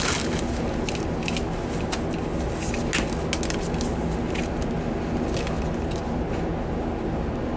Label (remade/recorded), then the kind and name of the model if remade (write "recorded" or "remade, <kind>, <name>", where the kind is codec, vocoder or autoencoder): recorded